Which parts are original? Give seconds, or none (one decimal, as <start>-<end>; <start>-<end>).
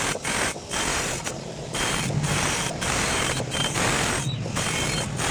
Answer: 0.0-0.9; 4.0-5.3